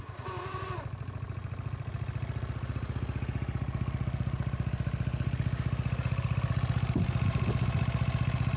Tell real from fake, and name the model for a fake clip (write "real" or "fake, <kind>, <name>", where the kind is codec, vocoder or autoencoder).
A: real